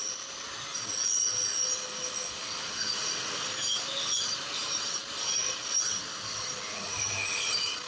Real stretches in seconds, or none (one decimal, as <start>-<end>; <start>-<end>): 0.7-2.1